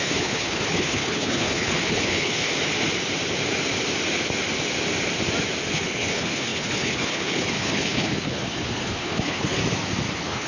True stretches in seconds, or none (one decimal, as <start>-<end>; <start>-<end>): 2.5-5.7; 9.6-10.1